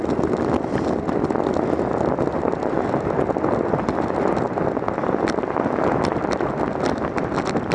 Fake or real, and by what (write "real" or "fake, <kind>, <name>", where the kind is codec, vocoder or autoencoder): real